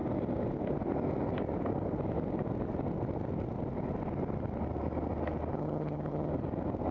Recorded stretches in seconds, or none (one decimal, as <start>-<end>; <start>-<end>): 0.0-5.5; 6.3-6.9